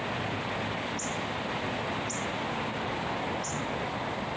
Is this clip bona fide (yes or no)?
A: yes